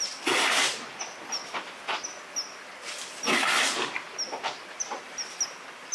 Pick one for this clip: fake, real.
real